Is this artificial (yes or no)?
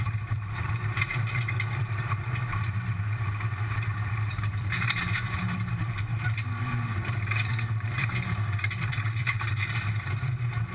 yes